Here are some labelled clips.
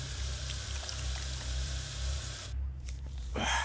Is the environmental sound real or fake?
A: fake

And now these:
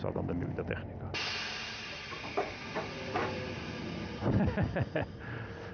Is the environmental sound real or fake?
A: real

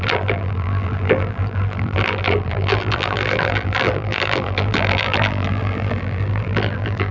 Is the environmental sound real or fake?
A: fake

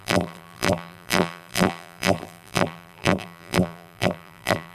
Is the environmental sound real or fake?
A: fake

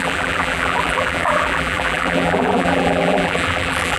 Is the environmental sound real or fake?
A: fake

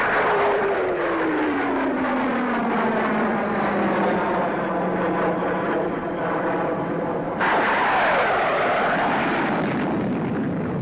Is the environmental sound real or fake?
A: fake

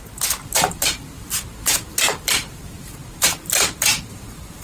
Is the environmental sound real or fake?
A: fake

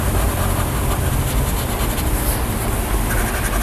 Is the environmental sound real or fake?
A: real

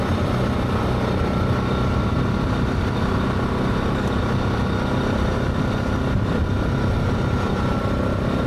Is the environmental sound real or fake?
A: real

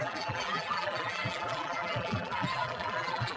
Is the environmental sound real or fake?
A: fake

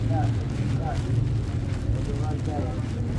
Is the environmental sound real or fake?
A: real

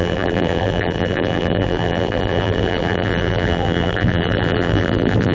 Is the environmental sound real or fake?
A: fake